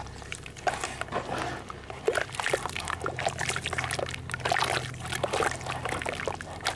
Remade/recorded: recorded